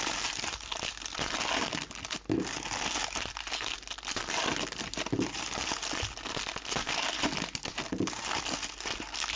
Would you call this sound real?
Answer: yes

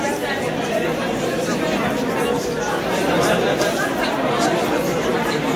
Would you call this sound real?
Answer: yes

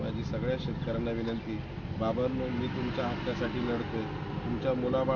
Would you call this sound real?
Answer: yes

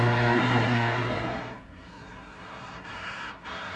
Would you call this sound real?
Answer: no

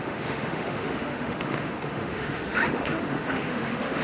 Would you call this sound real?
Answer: no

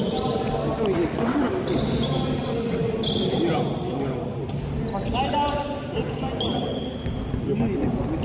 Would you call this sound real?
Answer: yes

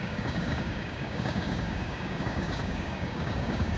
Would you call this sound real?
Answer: no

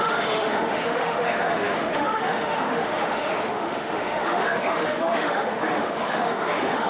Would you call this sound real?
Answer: no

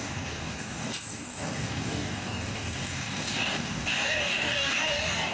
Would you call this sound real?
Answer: no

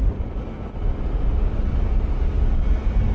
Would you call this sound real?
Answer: yes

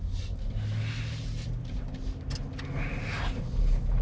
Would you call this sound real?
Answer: yes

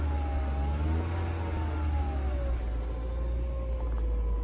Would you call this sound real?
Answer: yes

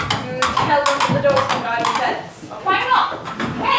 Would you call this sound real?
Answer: yes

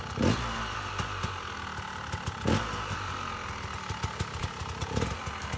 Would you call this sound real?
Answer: yes